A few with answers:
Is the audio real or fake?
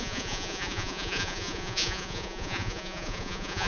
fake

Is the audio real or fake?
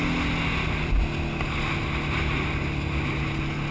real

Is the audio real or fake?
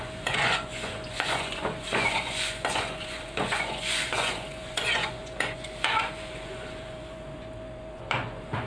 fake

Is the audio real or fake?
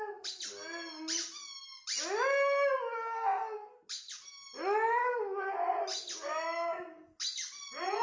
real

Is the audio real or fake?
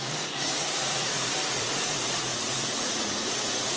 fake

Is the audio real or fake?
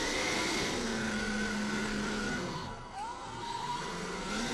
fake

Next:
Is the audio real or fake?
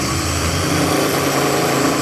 real